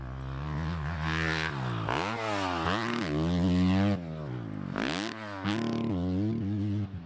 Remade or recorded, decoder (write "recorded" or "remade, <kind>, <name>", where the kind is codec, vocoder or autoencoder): recorded